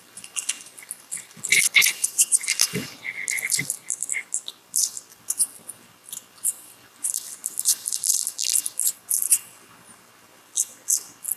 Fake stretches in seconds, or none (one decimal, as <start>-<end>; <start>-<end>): none